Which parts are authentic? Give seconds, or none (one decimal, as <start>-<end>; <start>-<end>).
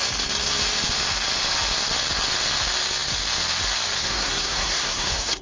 0.0-4.0